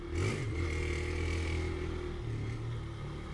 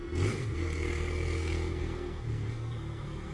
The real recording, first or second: first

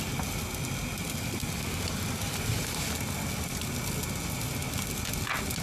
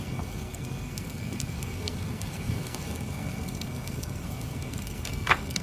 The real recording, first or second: first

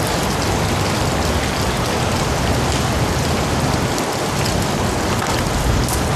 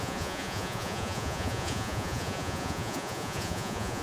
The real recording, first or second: first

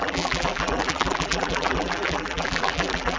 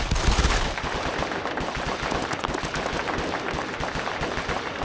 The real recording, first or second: second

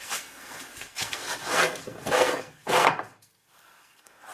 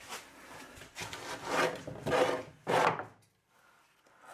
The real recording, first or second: second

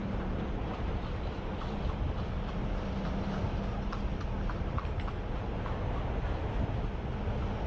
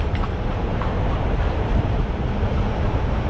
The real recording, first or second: first